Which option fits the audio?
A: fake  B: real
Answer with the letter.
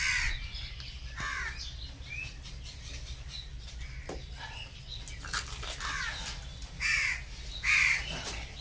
B